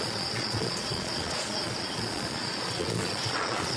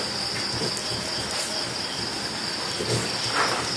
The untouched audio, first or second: second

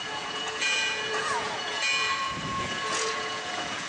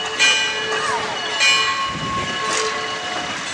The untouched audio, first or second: second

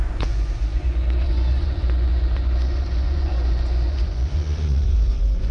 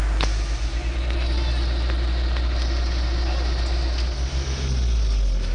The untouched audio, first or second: second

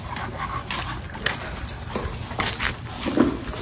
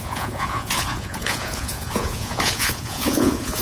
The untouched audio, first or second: first